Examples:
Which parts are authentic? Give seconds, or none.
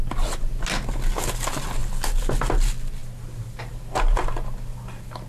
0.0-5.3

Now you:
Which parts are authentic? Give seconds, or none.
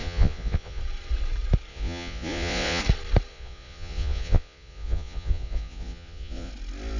0.8-1.7; 2.8-3.3; 6.5-7.0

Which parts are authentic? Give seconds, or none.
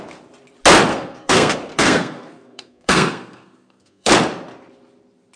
0.0-0.9; 4.1-5.4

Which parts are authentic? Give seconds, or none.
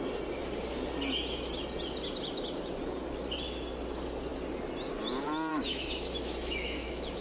0.0-5.5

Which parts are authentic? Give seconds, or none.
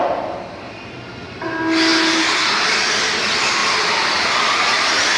0.0-5.2